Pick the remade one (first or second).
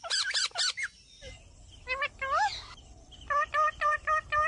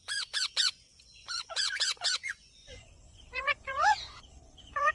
second